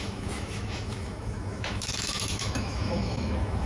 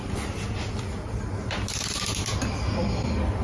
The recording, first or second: second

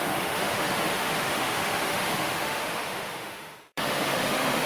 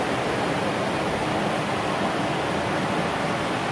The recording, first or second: second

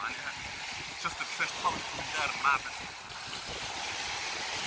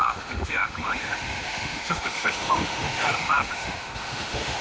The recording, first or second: first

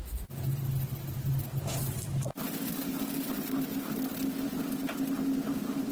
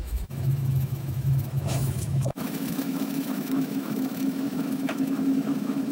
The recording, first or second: first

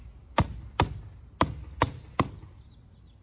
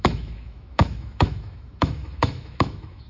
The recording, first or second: first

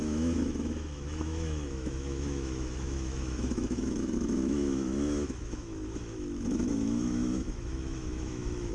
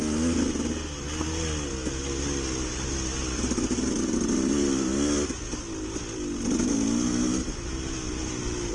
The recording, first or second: second